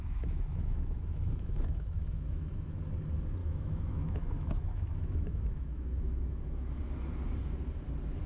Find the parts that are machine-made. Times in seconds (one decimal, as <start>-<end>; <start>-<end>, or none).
0.0-2.8; 3.4-6.8